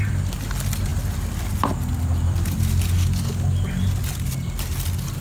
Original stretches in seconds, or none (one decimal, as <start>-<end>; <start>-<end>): 0.0-5.2